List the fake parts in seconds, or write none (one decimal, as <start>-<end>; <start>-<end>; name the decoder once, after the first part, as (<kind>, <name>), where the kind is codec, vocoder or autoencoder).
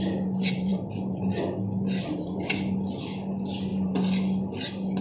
none